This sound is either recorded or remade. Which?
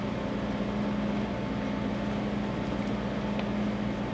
recorded